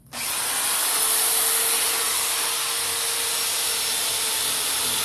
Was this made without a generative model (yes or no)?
yes